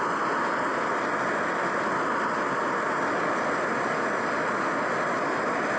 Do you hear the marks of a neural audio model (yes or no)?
no